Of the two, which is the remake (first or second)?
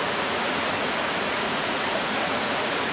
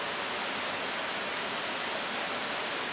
first